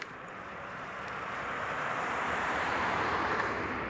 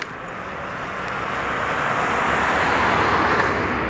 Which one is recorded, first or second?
second